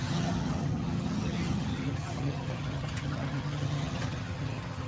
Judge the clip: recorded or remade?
remade